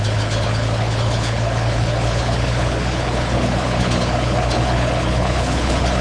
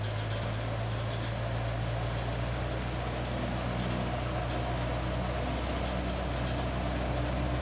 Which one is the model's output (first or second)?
first